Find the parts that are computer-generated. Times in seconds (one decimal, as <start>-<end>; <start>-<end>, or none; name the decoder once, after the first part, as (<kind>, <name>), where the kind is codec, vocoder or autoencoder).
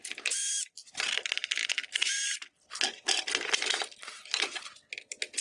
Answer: none